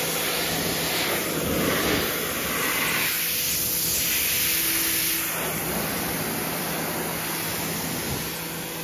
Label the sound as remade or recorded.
recorded